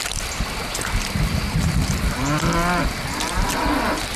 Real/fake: real